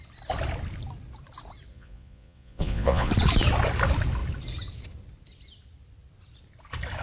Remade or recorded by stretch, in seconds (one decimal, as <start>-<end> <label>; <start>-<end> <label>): 0.0-1.7 recorded; 1.7-3.1 remade; 3.1-7.0 recorded